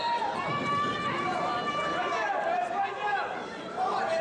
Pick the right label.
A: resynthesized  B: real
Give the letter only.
A